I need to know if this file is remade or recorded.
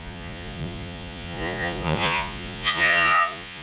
remade